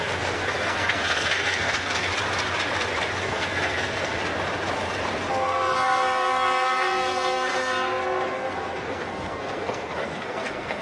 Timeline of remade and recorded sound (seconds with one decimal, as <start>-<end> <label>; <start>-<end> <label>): 0.0-2.1 remade; 2.1-3.2 recorded; 3.2-4.2 remade; 4.2-5.3 recorded; 5.3-10.8 remade